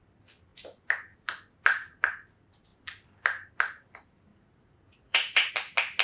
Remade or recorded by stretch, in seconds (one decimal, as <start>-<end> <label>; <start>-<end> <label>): 0.0-4.3 recorded; 4.3-5.5 remade; 5.5-6.0 recorded